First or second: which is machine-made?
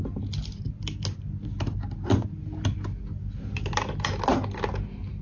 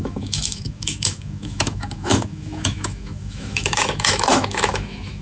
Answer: second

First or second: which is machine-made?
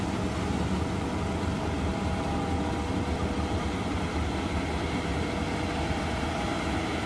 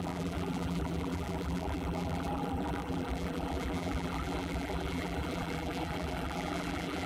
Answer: second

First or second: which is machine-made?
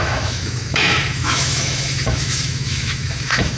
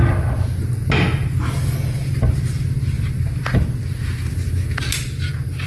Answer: first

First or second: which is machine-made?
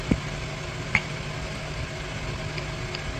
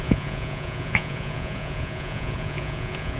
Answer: second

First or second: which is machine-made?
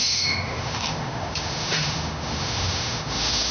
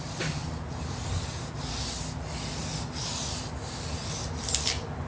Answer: first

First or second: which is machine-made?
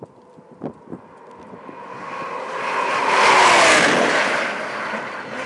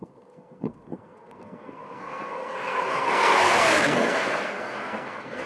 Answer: second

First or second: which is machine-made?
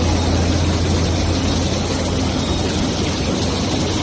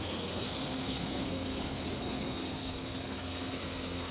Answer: second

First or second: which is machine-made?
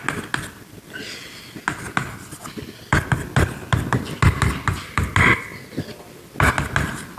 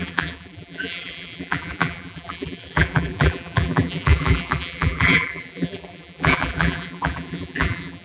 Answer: second